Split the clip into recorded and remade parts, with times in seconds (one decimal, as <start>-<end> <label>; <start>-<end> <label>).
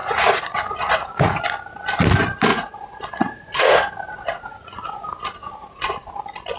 0.0-1.4 remade; 1.4-2.5 recorded; 2.5-5.0 remade; 5.0-5.4 recorded; 5.4-6.1 remade; 6.1-6.6 recorded